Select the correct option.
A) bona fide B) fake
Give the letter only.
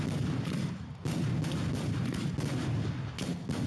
A